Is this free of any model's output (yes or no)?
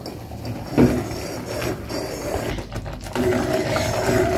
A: yes